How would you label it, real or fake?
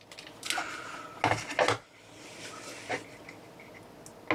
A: real